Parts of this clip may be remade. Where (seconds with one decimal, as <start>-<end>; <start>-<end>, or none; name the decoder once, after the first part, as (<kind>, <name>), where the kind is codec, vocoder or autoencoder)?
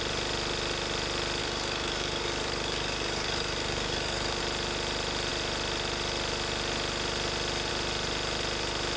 1.4-4.4 (codec, DAC)